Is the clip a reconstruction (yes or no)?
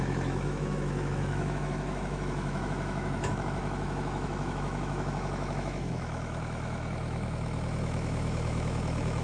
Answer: yes